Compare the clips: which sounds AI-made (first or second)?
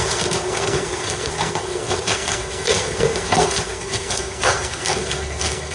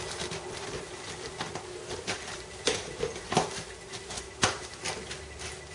first